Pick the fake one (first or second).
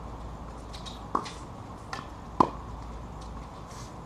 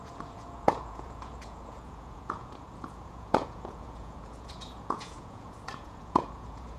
second